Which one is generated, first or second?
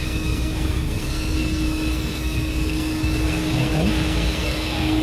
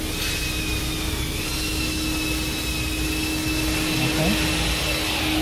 first